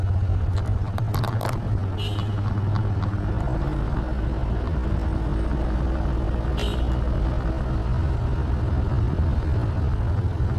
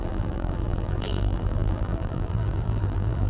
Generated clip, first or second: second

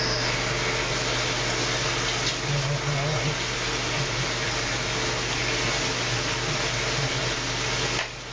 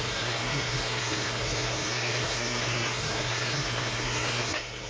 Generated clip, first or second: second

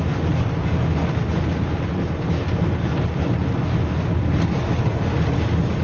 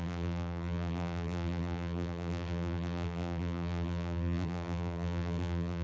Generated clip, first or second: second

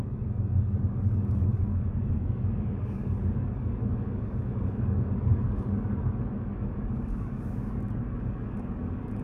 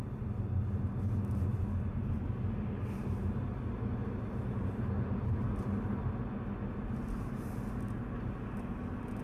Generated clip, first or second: first